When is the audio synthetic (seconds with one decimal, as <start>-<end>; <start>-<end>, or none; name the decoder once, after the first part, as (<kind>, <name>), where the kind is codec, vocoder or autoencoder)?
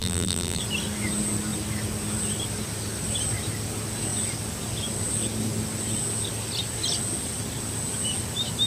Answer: 0.0-0.6 (vocoder, BigVGAN v2)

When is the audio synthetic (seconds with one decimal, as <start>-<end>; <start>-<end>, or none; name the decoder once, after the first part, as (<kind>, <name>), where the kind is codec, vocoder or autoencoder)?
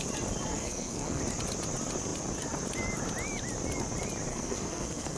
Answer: 0.5-1.2 (codec, SNAC); 4.3-5.2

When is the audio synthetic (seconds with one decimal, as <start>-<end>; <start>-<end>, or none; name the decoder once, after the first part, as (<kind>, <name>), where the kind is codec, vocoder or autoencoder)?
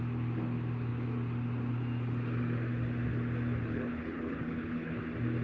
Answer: 3.6-5.0 (codec, HILCodec)